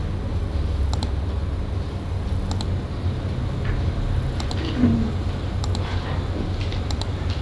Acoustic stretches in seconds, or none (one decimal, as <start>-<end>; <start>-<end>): 0.0-7.4